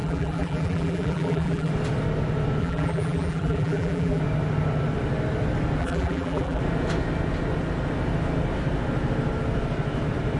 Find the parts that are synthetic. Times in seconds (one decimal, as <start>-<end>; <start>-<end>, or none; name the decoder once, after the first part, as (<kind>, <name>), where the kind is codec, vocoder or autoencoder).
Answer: 0.0-1.7 (vocoder, BigVGAN v2); 2.6-4.2; 5.8-6.6